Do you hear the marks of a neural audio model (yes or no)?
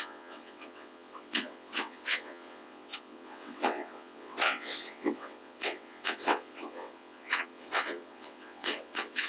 yes